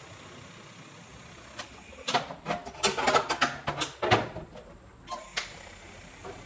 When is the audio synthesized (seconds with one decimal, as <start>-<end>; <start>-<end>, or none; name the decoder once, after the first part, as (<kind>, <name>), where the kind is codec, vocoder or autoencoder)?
none